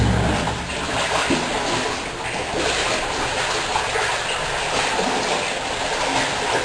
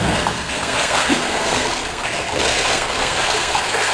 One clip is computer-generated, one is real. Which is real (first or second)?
first